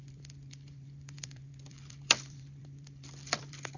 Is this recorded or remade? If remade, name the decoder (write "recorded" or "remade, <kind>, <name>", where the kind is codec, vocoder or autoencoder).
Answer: remade, vocoder, BigVGAN v2